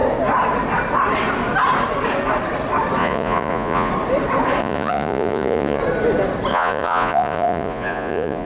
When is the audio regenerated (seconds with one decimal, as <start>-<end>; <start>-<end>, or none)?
3.0-3.9; 4.6-5.8; 6.5-8.5